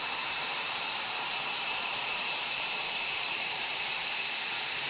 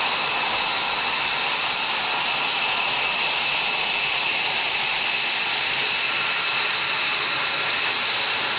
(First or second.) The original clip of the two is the second